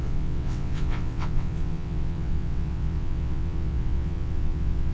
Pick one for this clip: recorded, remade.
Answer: remade